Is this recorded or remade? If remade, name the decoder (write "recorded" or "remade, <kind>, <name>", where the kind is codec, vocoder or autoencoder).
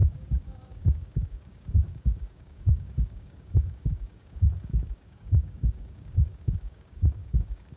remade, codec, DAC